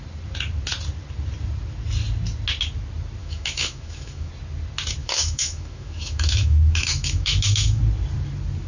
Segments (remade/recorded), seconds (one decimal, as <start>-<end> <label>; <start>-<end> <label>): 0.0-3.2 recorded; 3.2-4.3 remade; 4.3-5.0 recorded; 5.0-7.8 remade; 7.8-8.7 recorded